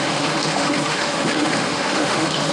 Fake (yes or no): yes